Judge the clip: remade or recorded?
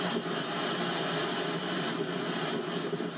recorded